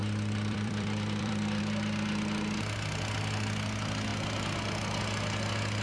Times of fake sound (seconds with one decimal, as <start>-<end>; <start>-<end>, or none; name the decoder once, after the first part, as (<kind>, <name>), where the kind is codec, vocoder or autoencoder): 0.0-1.6 (vocoder, BigVGAN v2)